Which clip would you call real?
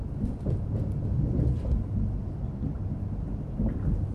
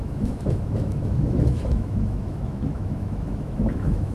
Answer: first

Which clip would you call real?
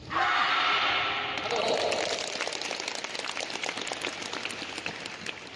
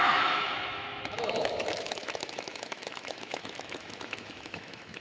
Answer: first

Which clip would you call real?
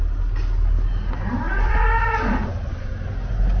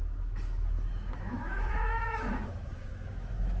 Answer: first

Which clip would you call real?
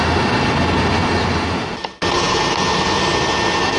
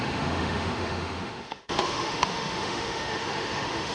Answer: first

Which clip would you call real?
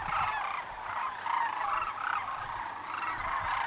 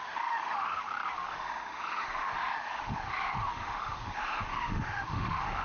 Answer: first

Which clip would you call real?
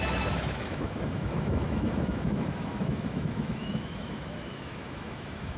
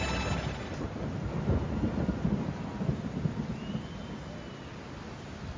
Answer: second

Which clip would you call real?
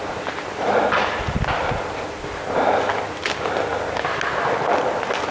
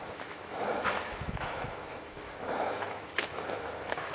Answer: first